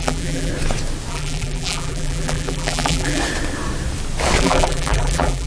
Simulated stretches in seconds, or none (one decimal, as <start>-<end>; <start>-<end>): 0.0-0.5; 1.1-3.2; 4.4-5.5